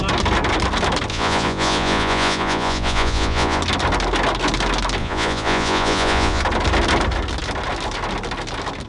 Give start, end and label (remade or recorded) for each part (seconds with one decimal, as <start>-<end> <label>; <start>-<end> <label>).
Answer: 0.0-1.1 recorded; 1.1-3.6 remade; 3.6-5.0 recorded; 5.0-6.4 remade; 6.4-8.9 recorded